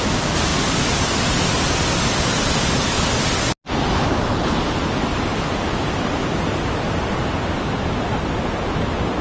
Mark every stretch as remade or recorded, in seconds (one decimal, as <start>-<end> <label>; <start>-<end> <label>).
0.0-9.2 recorded